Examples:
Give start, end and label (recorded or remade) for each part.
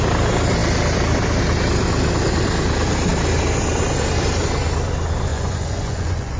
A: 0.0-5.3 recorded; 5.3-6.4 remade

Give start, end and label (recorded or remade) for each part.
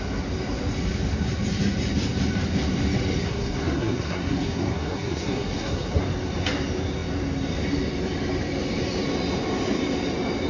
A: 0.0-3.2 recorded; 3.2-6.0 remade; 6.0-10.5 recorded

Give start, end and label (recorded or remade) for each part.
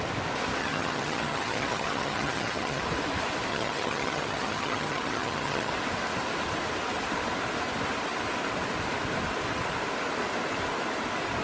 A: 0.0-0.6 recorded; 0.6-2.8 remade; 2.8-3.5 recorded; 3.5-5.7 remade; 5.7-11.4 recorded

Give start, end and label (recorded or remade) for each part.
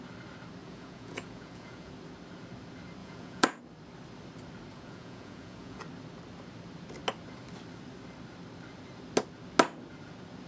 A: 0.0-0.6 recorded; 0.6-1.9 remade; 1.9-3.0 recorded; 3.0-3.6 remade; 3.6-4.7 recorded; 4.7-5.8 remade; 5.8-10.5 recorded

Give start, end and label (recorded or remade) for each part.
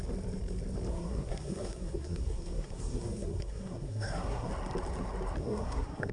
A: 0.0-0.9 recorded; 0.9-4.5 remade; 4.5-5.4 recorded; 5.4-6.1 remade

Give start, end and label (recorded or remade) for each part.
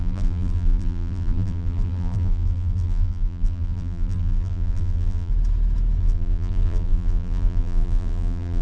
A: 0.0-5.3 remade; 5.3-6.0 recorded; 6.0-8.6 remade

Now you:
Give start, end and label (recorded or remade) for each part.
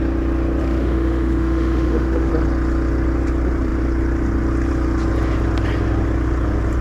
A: 0.0-0.6 recorded; 0.6-2.3 remade; 2.3-6.8 recorded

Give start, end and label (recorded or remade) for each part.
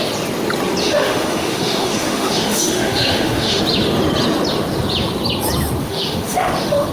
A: 0.0-0.8 recorded; 0.8-3.6 remade; 3.6-5.8 recorded; 5.8-6.9 remade